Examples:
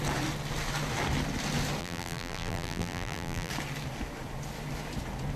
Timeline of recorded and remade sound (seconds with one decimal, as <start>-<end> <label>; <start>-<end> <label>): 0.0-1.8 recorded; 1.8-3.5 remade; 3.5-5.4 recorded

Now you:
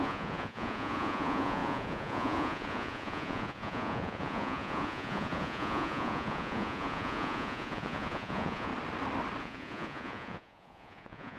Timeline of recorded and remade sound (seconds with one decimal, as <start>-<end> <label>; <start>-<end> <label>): 0.0-8.7 remade; 8.7-9.4 recorded; 9.4-11.4 remade

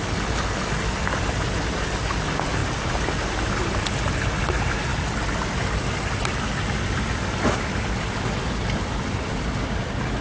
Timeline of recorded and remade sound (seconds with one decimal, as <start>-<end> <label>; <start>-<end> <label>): 0.0-2.6 recorded; 2.6-3.8 remade; 3.8-10.2 recorded

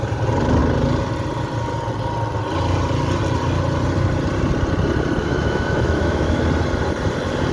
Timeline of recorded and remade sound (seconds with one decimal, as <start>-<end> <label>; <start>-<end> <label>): 0.0-5.2 recorded; 5.2-6.4 remade; 6.4-7.5 recorded

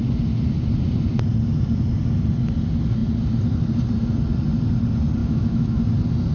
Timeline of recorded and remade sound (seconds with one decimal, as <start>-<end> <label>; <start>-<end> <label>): 0.0-5.2 recorded; 5.2-5.8 remade; 5.8-6.3 recorded